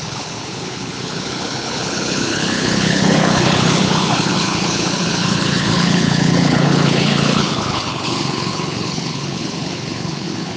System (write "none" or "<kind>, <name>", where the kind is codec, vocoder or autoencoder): codec, HILCodec